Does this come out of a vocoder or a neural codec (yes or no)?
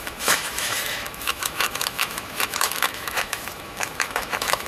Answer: yes